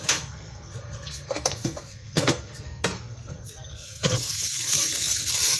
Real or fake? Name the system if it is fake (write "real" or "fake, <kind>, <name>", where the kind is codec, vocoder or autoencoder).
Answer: fake, codec, SNAC